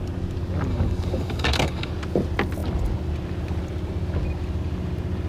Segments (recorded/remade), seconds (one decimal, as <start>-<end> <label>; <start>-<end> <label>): 0.0-0.7 recorded; 0.7-1.9 remade; 1.9-5.3 recorded

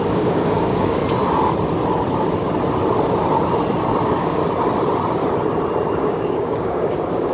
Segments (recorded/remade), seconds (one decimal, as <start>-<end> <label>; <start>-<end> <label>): 0.0-1.0 remade; 1.0-4.0 recorded; 4.0-4.4 remade; 4.4-5.9 recorded; 5.9-7.3 remade

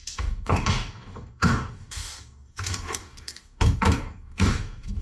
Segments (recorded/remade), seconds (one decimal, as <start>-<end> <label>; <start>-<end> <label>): 0.0-5.0 remade

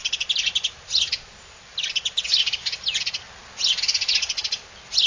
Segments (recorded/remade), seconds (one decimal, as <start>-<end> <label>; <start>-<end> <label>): 0.0-5.1 recorded

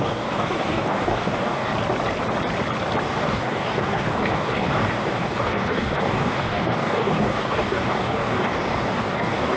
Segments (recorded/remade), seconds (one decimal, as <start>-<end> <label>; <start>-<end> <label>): 0.0-1.7 remade; 1.7-3.0 recorded; 3.0-9.6 remade

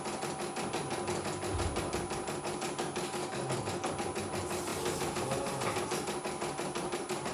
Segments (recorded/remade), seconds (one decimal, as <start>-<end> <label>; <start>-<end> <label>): 0.0-3.2 recorded; 3.2-3.9 remade; 3.9-7.3 recorded

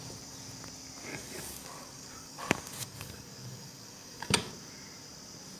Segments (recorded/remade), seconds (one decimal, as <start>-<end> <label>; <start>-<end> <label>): 0.0-1.1 recorded; 1.1-4.5 remade; 4.5-5.6 recorded